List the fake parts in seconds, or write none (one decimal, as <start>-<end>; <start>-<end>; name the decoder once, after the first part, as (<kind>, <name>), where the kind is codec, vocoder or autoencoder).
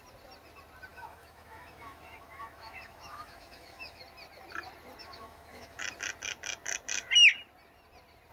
0.9-4.0 (autoencoder, DAC-VAE); 5.0-5.8